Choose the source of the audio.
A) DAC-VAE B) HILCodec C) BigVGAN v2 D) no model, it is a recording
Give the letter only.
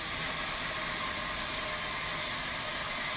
D